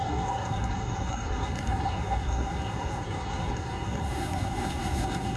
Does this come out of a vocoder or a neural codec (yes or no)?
yes